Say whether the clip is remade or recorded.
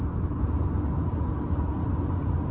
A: recorded